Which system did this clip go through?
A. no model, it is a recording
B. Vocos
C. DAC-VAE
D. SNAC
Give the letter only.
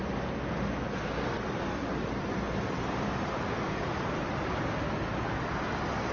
A